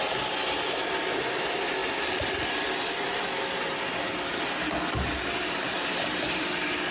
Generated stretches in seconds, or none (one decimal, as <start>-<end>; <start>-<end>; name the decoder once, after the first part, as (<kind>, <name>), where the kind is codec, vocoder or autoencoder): 1.8-2.7 (vocoder, BigVGAN v2)